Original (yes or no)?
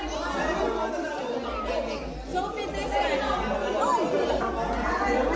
yes